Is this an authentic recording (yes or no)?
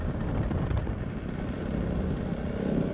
no